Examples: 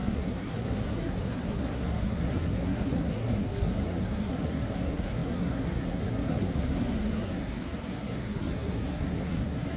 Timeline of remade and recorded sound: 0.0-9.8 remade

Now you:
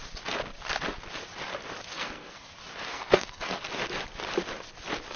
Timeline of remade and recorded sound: 0.0-1.9 recorded; 1.9-2.5 remade; 2.5-2.9 recorded; 2.9-3.6 remade; 3.6-5.2 recorded

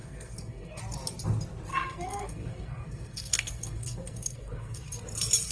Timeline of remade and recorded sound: 0.0-0.8 remade; 0.8-1.7 recorded; 1.7-5.0 remade; 5.0-5.5 recorded